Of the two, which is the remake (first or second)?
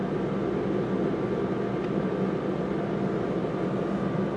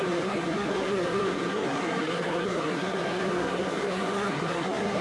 second